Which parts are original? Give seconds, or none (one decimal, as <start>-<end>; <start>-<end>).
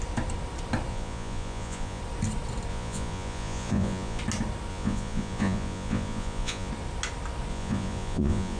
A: 0.0-0.9; 2.0-2.7; 4.2-4.7; 6.7-7.5